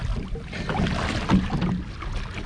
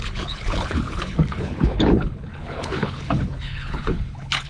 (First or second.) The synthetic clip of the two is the second